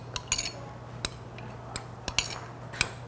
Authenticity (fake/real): real